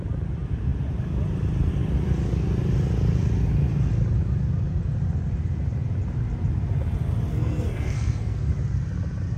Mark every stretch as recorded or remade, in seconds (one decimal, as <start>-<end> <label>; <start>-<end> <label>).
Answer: 0.0-7.3 recorded; 7.3-8.5 remade; 8.5-9.4 recorded